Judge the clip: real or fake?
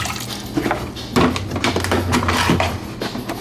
real